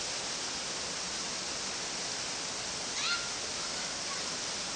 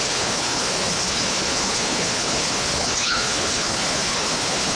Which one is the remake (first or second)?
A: second